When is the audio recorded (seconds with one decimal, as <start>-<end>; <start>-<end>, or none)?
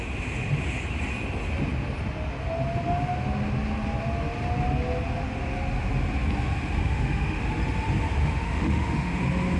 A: 0.0-6.8; 7.4-8.2; 9.2-9.6